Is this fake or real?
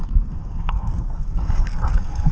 fake